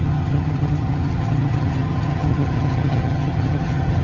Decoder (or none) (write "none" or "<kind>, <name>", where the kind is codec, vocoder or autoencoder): vocoder, HiFi-GAN